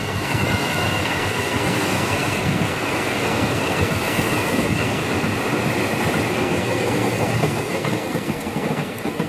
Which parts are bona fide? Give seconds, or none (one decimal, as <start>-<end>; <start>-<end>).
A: 5.0-6.3